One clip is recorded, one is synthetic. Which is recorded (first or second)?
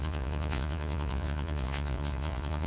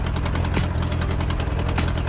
second